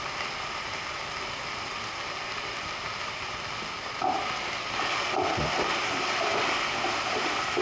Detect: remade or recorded remade